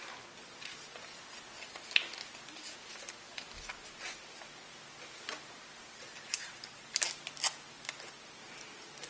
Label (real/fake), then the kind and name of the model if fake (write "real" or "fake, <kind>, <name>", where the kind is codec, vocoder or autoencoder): real